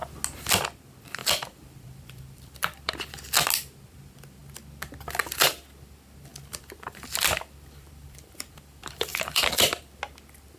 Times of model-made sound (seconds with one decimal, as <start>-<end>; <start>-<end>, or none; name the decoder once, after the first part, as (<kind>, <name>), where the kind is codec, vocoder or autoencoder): 1.2-3.1 (vocoder, BigVGAN v2); 6.3-9.8